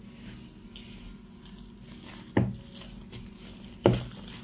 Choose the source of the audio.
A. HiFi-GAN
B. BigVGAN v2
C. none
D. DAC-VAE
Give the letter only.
C